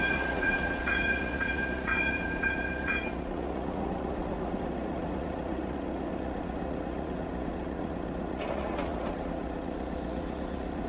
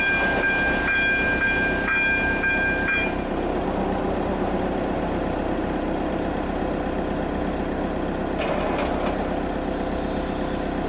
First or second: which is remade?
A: first